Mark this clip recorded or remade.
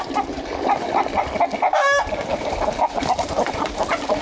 recorded